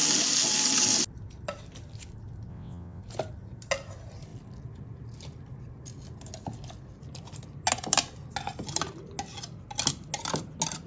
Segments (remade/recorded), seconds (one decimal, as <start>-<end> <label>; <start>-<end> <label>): 0.0-2.5 recorded; 2.5-3.0 remade; 3.0-10.9 recorded